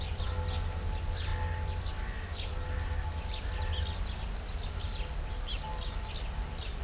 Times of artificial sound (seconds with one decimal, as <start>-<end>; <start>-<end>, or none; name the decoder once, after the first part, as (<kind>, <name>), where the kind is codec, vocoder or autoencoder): none